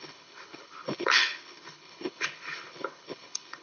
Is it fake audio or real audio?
fake